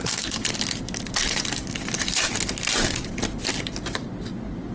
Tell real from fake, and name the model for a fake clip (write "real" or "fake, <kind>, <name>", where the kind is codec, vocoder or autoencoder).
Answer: real